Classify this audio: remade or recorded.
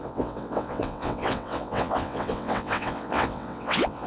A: remade